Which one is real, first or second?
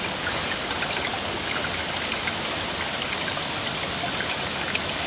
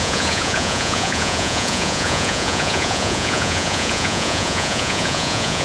first